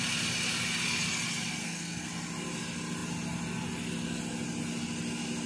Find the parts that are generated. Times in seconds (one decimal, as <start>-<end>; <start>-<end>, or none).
1.6-2.1